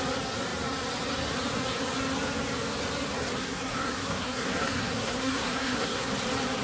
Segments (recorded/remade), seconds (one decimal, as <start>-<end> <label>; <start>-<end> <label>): 0.0-3.4 recorded; 3.4-6.1 remade; 6.1-6.6 recorded